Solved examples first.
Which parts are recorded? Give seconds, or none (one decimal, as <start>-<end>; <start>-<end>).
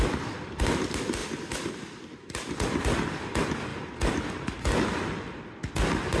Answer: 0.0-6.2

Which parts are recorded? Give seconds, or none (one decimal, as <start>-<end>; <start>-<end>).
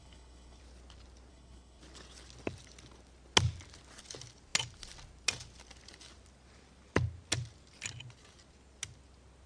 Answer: 0.6-1.3; 1.8-9.5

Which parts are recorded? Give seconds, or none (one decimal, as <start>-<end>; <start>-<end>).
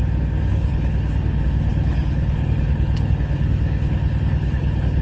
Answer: 0.0-0.5